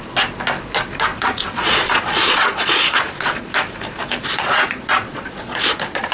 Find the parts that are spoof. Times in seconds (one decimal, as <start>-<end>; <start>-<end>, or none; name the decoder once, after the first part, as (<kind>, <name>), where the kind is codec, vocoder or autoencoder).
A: 1.1-3.4 (vocoder, Vocos); 4.3-6.1